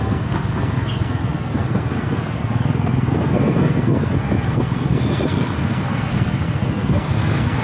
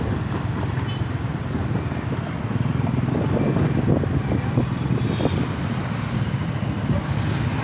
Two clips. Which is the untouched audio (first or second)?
second